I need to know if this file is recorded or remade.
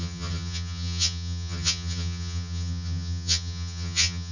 remade